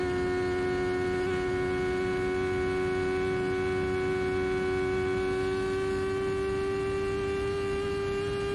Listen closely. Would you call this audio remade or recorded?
recorded